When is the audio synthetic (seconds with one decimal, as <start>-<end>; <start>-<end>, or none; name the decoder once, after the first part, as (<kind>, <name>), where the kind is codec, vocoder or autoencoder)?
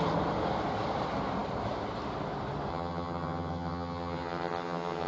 2.7-5.1 (vocoder, HiFi-GAN)